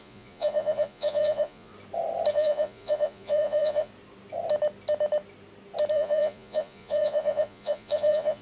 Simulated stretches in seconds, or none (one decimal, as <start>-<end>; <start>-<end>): 0.0-1.7; 2.3-3.9; 5.9-8.4